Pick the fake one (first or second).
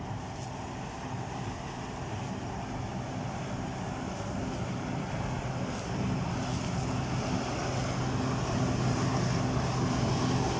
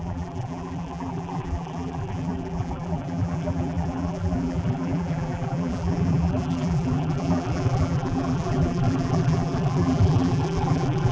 second